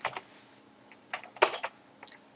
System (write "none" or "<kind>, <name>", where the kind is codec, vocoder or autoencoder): none